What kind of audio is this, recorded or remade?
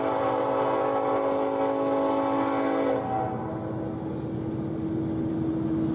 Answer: recorded